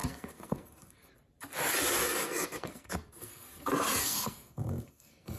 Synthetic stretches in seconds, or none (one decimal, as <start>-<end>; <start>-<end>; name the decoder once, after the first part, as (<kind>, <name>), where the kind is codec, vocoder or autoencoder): 0.0-1.1 (codec, SNAC); 2.0-5.4